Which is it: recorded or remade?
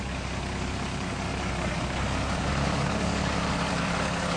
remade